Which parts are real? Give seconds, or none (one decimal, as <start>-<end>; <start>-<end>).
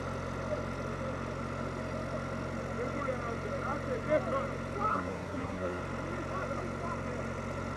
0.0-4.9; 5.8-7.8